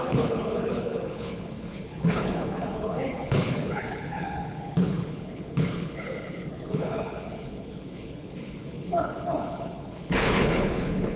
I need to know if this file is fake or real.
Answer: fake